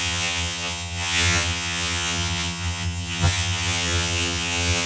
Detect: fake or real fake